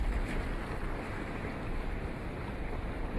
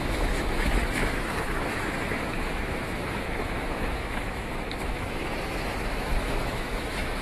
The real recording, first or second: first